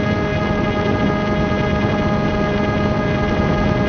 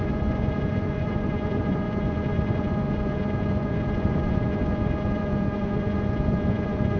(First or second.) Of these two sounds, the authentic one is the first